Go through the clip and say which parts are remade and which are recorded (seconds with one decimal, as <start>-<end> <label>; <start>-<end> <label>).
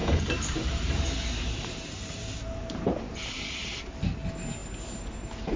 0.0-3.4 remade; 3.4-5.6 recorded